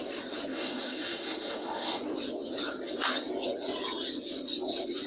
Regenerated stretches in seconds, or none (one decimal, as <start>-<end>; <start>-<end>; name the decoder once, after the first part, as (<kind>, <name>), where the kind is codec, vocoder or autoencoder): 0.5-2.0 (autoencoder, DAC-VAE)